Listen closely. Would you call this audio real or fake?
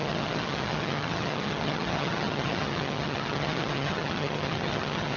fake